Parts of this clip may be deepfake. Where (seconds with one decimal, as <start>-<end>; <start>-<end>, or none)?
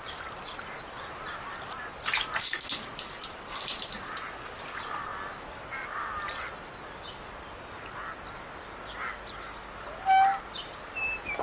none